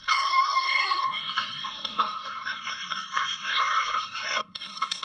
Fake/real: fake